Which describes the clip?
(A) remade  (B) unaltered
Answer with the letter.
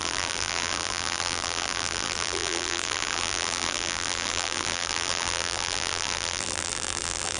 A